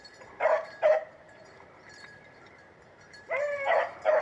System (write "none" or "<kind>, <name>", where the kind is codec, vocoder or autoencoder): vocoder, BigVGAN v2